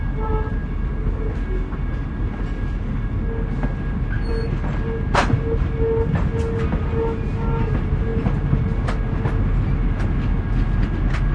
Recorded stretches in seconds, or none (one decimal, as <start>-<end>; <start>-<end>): 0.0-11.3